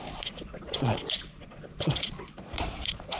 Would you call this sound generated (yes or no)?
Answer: yes